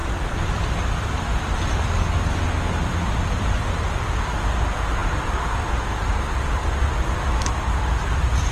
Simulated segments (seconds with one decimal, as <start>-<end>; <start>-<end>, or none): none